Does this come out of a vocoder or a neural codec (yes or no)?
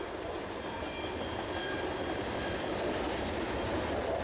no